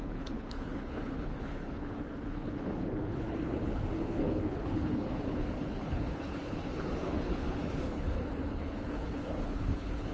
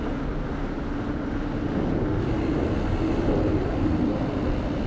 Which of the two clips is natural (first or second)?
second